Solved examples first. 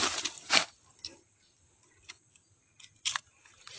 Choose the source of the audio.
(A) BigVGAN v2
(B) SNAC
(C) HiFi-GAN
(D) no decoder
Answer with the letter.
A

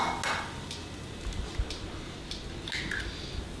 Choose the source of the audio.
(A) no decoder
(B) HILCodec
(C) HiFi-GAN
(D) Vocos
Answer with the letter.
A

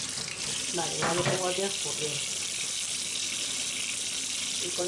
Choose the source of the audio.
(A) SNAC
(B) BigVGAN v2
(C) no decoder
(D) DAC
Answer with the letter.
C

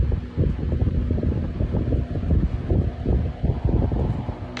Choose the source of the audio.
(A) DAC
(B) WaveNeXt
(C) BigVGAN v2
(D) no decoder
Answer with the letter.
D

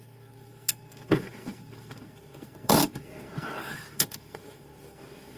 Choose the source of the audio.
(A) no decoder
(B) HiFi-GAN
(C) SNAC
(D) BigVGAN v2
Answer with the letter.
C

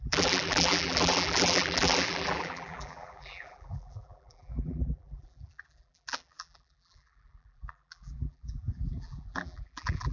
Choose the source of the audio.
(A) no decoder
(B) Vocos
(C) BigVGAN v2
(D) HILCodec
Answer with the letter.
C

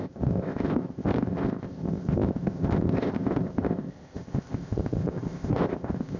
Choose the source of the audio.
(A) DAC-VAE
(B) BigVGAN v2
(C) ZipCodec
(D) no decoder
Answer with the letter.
C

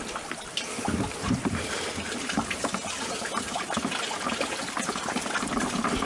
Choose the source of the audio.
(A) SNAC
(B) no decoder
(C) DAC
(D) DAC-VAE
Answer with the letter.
B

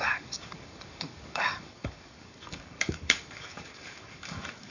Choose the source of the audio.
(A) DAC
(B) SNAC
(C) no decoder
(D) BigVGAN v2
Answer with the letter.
A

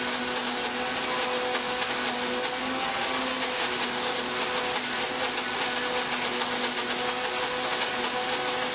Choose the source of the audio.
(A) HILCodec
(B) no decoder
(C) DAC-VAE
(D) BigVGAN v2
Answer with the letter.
B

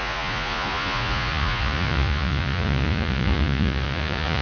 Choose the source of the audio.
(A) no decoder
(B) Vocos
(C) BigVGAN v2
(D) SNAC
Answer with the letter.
B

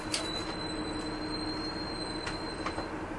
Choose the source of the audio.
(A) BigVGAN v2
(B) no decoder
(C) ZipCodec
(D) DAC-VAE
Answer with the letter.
B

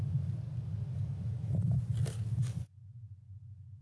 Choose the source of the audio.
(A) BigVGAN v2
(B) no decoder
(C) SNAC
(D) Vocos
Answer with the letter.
B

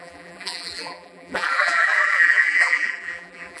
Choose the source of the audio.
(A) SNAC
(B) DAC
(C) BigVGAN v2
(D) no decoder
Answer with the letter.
C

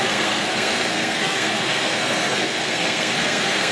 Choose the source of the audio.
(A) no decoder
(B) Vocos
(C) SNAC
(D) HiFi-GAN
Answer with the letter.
C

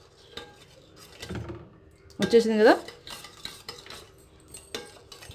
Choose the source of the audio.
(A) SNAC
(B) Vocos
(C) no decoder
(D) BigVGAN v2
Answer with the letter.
C